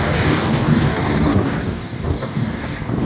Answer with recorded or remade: remade